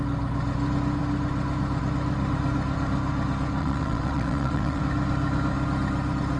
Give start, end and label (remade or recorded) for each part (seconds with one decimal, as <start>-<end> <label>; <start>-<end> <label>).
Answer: 0.0-3.6 recorded; 3.6-4.8 remade; 4.8-6.4 recorded